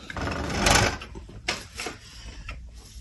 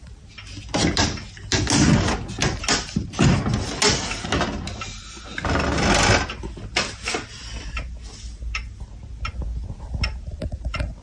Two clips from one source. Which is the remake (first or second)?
first